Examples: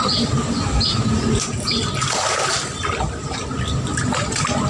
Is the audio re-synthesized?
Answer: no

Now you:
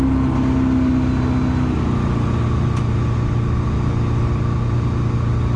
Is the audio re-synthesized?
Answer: no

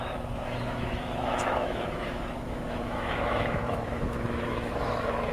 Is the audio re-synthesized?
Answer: yes